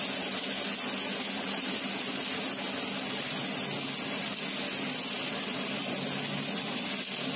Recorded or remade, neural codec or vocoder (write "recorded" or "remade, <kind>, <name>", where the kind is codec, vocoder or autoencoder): recorded